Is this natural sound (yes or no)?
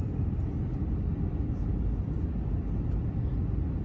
yes